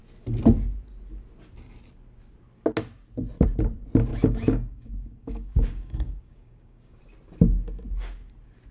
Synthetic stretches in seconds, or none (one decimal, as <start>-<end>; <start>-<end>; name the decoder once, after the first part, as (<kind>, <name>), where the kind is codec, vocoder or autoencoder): 4.1-7.0 (codec, DAC)